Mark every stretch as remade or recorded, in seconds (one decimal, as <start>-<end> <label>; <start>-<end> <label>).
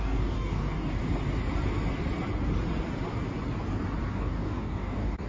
0.0-0.9 remade; 0.9-4.1 recorded; 4.1-5.3 remade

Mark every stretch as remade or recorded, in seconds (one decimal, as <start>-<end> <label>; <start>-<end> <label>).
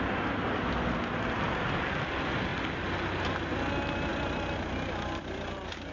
0.0-5.9 recorded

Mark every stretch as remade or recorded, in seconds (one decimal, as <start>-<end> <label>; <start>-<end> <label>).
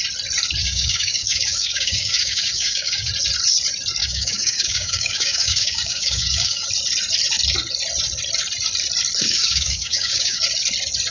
0.0-0.6 recorded; 0.6-3.1 remade; 3.1-4.0 recorded; 4.0-6.7 remade; 6.7-9.2 recorded; 9.2-10.4 remade; 10.4-11.1 recorded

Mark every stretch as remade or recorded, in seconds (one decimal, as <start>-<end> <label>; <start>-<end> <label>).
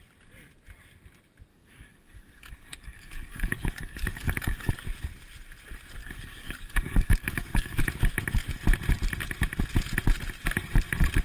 0.0-1.5 recorded; 1.5-4.7 remade; 4.7-6.0 recorded; 6.0-7.8 remade; 7.8-11.2 recorded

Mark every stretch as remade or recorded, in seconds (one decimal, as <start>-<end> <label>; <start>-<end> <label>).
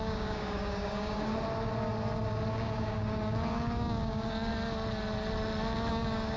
0.0-1.3 remade; 1.3-2.5 recorded; 2.5-4.5 remade; 4.5-5.9 recorded; 5.9-6.4 remade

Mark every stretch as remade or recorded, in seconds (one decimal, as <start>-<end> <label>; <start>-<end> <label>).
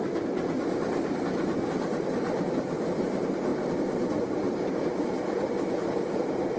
0.0-6.6 recorded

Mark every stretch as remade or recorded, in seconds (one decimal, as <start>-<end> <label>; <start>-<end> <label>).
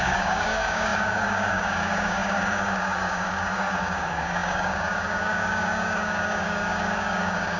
0.0-7.6 remade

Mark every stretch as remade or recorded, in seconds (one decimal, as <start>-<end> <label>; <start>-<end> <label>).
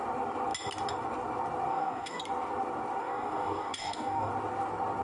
0.0-1.7 recorded; 1.7-2.2 remade; 2.2-3.0 recorded; 3.0-4.3 remade; 4.3-5.0 recorded